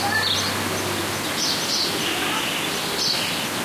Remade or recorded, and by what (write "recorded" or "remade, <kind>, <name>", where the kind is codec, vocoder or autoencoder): recorded